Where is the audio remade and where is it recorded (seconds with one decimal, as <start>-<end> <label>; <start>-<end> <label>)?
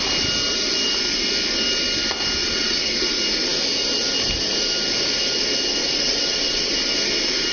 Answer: 0.0-2.4 recorded; 2.4-3.1 remade; 3.1-5.8 recorded; 5.8-6.7 remade; 6.7-7.5 recorded